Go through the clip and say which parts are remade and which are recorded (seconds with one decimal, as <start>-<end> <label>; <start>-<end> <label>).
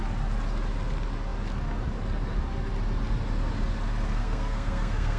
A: 0.0-4.2 recorded; 4.2-5.2 remade